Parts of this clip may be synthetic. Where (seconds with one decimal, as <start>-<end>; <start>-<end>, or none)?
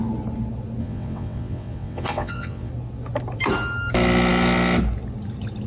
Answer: 0.8-2.7